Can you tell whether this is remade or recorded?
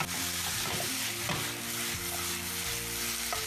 recorded